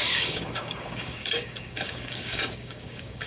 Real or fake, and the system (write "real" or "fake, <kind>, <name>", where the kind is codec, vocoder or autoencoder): fake, codec, DAC